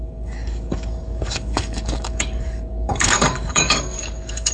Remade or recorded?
remade